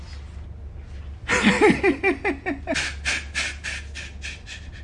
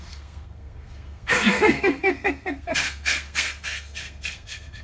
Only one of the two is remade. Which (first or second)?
second